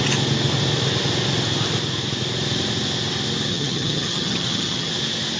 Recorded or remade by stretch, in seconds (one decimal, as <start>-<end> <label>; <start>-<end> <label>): 0.0-3.5 recorded; 3.5-4.9 remade; 4.9-5.4 recorded